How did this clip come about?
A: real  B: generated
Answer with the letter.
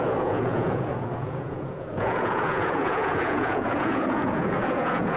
B